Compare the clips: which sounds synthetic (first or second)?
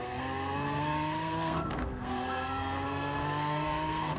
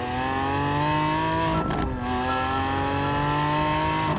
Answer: first